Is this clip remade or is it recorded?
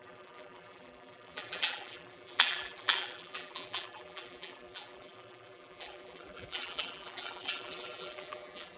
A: remade